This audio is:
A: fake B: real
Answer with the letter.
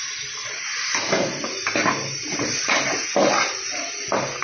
B